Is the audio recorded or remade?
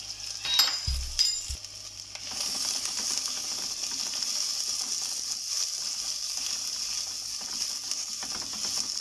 recorded